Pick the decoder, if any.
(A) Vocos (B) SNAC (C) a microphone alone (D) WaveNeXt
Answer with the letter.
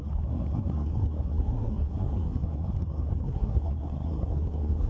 B